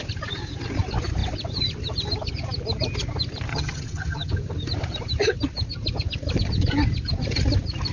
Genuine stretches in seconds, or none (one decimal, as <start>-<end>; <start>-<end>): 0.0-3.5; 4.3-7.9